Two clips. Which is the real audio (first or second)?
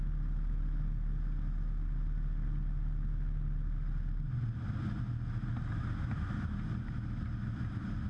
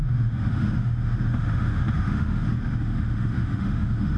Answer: first